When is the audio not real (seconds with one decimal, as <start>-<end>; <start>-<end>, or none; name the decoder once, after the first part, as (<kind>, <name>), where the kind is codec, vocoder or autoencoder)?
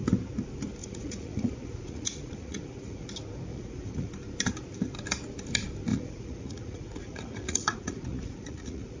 0.8-3.1 (vocoder, Vocos); 3.5-4.1; 5.9-9.0